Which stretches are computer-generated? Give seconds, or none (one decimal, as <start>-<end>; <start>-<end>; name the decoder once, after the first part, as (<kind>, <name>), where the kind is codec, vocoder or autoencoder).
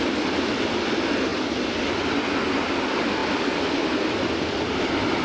3.2-5.2 (vocoder, BigVGAN v2)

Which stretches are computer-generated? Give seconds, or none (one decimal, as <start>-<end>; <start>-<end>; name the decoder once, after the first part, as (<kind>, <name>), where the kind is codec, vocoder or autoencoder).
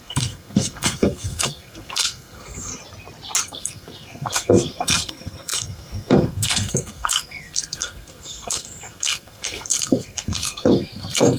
0.0-2.7 (codec, SNAC); 3.4-11.4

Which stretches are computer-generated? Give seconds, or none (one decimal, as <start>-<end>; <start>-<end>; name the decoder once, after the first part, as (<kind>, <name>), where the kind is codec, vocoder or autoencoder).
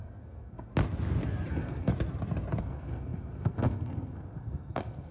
0.0-0.7 (codec, SNAC); 1.5-1.9; 2.6-5.1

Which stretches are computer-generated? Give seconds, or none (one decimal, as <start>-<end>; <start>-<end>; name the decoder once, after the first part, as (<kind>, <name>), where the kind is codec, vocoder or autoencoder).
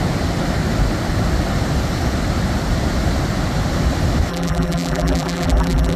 4.3-6.0 (vocoder, BigVGAN v2)